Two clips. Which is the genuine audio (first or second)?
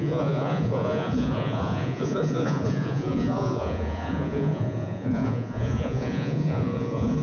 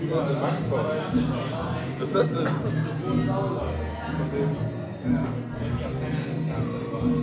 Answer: second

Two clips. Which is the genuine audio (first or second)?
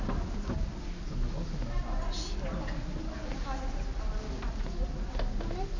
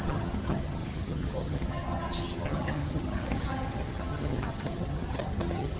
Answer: first